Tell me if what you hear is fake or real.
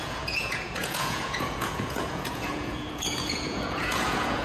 fake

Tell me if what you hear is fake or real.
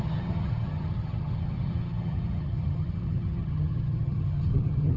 fake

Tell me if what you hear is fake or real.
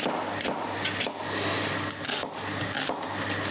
real